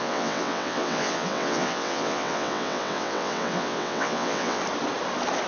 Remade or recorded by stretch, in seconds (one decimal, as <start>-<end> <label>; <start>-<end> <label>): 0.0-4.6 remade; 4.6-5.5 recorded